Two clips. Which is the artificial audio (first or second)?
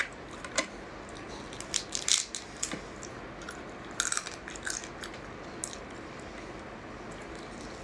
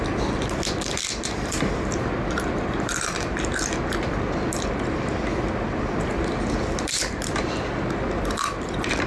second